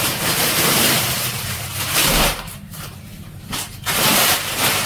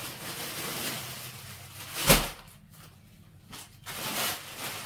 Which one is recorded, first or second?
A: second